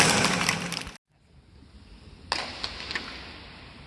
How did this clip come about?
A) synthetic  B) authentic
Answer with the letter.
B